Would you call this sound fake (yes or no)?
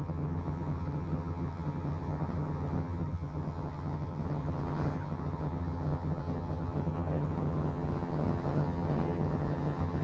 yes